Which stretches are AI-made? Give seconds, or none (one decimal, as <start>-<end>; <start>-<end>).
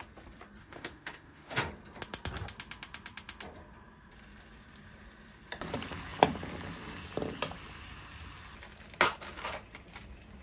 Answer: 0.6-1.7